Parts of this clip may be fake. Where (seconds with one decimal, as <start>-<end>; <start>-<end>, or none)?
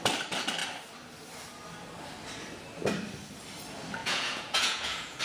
4.0-5.2